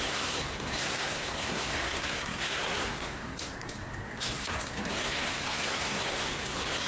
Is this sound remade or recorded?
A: remade